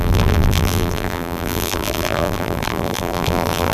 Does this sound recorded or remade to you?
remade